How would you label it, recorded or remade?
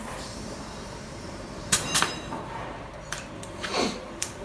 remade